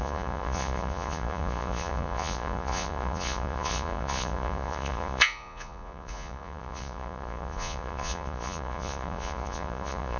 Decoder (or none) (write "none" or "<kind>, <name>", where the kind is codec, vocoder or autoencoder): vocoder, Vocos